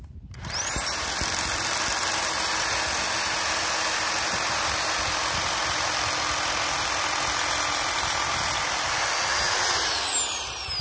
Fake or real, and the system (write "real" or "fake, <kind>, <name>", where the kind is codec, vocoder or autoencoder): real